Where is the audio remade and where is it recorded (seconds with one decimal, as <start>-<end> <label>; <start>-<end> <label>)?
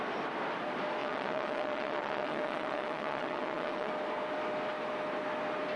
0.0-1.0 recorded; 1.0-3.9 remade; 3.9-5.8 recorded